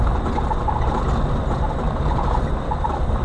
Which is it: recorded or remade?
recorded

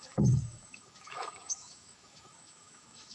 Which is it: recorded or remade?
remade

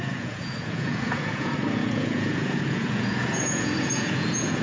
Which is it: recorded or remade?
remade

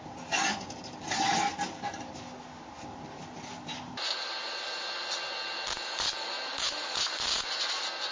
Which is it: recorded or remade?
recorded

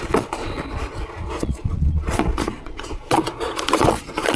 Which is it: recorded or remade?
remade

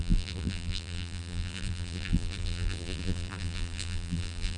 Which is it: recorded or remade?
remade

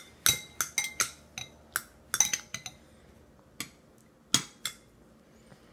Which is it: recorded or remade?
recorded